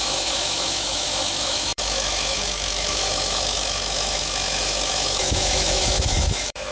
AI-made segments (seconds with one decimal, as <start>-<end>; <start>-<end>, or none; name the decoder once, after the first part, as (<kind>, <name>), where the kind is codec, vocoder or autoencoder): 0.0-6.7 (autoencoder, DAC-VAE)